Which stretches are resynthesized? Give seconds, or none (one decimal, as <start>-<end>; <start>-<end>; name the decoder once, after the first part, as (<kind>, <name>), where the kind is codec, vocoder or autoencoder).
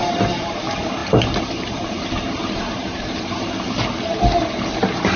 0.0-0.6 (vocoder, BigVGAN v2); 1.0-3.5